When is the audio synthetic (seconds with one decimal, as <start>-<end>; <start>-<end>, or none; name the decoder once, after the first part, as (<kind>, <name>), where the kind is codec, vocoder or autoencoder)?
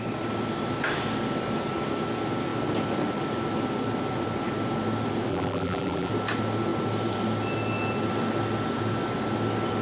5.3-6.1 (vocoder, BigVGAN v2)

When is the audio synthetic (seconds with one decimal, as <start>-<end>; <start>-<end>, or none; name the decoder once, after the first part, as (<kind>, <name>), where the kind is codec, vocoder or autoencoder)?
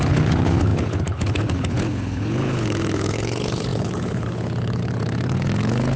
0.0-6.0 (codec, HILCodec)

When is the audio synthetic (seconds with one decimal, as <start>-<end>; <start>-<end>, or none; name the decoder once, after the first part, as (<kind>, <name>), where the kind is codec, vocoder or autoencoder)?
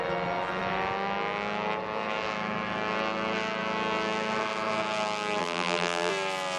5.4-6.1 (vocoder, BigVGAN v2)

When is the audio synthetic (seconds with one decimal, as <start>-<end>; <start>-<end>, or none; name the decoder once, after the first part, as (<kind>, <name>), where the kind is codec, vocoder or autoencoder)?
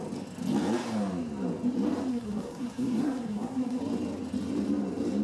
2.1-3.8 (codec, SNAC)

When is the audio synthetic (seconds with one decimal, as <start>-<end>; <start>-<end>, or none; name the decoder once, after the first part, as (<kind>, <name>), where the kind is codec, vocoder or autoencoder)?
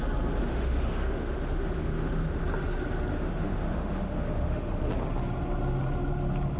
0.4-2.4 (autoencoder, DAC-VAE); 3.1-4.8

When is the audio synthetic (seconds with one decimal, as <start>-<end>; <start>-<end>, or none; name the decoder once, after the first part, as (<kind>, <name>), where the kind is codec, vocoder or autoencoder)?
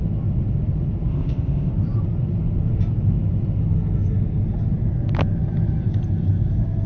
1.1-1.7 (codec, ZipCodec)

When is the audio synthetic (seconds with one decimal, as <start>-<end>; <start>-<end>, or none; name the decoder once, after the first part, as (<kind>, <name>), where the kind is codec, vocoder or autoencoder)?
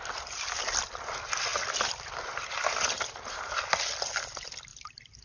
none